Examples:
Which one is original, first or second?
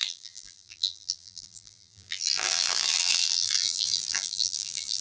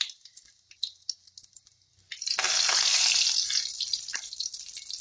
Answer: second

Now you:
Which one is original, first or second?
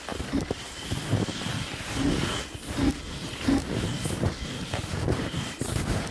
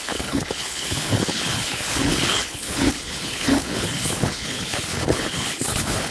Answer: first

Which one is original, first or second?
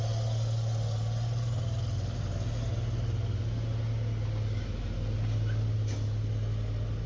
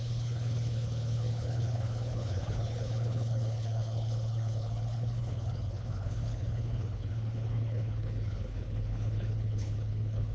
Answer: first